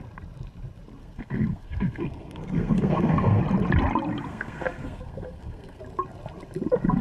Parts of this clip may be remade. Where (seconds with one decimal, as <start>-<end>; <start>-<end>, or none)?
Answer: 1.0-3.4; 4.3-5.8